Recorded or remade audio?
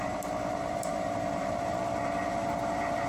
remade